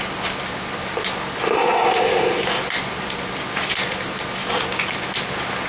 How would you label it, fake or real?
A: real